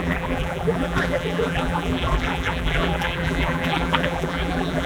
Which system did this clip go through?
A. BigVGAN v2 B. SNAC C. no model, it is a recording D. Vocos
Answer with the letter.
A